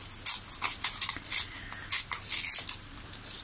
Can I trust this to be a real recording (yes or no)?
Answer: yes